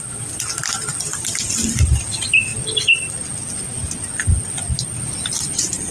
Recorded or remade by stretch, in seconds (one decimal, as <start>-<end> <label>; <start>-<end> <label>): 0.0-5.9 recorded